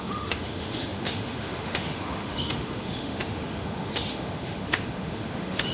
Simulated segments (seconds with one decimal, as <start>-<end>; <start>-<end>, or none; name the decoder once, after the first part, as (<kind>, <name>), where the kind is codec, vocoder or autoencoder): 0.0-5.7 (autoencoder, DAC-VAE)